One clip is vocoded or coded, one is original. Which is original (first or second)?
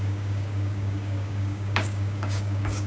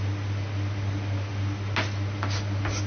second